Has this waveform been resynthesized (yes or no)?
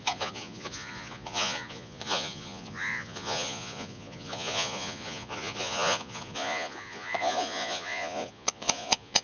yes